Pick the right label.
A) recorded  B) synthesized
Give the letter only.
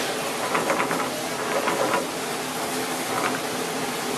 A